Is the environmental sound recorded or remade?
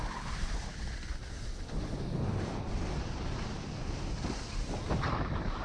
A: recorded